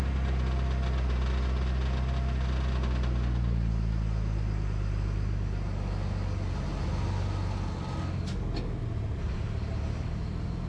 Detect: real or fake real